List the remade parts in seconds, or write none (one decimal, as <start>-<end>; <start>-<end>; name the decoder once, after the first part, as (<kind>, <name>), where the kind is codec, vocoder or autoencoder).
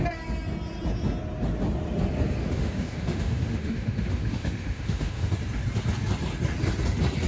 2.4-5.3 (autoencoder, DAC-VAE)